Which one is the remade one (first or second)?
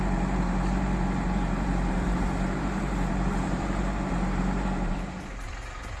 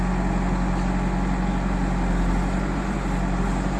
first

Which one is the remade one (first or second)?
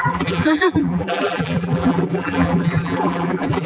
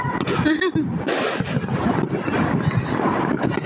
first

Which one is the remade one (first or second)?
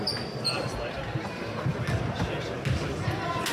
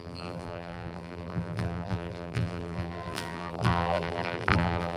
second